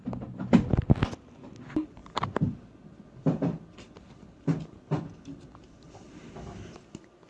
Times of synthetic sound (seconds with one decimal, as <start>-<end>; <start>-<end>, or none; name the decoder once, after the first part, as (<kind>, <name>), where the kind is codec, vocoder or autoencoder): 2.0-5.0 (vocoder, BigVGAN v2)